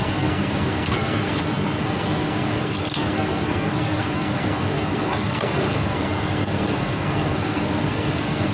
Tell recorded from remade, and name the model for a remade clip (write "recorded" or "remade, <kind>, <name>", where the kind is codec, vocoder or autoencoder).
remade, codec, SNAC